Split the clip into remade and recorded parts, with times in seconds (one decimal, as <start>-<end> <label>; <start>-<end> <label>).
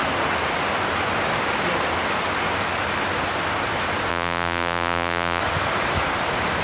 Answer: 0.0-4.1 recorded; 4.1-5.4 remade; 5.4-6.6 recorded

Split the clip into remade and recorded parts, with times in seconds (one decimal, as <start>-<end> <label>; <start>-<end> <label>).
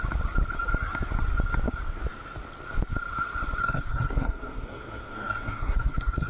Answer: 0.0-3.6 recorded; 3.6-6.3 remade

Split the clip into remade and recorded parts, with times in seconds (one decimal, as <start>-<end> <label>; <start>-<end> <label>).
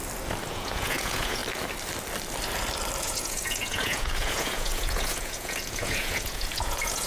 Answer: 0.0-0.5 recorded; 0.5-1.4 remade; 1.4-3.0 recorded; 3.0-7.1 remade